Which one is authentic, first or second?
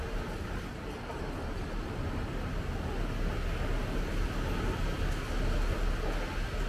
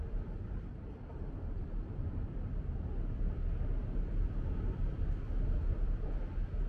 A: first